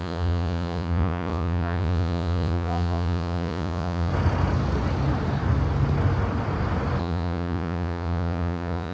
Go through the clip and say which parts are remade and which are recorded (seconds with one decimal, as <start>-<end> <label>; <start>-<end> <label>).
0.0-4.1 remade; 4.1-7.0 recorded; 7.0-8.9 remade